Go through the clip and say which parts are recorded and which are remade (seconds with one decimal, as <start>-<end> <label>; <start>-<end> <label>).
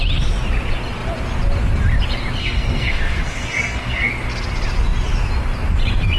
0.0-2.4 recorded; 2.4-4.1 remade; 4.1-6.2 recorded